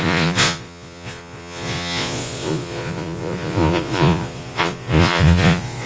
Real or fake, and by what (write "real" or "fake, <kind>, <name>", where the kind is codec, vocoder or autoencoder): fake, vocoder, Vocos